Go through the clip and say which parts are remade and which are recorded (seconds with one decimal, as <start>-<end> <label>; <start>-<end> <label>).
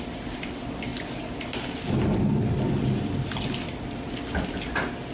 0.0-0.9 recorded; 0.9-4.0 remade; 4.0-5.1 recorded